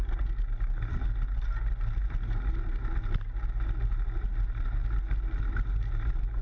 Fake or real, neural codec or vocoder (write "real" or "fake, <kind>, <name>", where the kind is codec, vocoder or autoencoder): real